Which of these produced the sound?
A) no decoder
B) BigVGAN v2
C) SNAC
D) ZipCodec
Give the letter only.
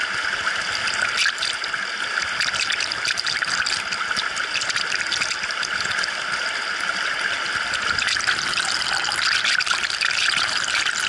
A